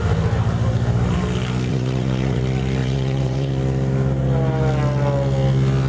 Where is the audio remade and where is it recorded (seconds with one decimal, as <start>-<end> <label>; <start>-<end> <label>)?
0.0-1.7 recorded; 1.7-2.4 remade; 2.4-2.8 recorded; 2.8-3.5 remade; 3.5-5.9 recorded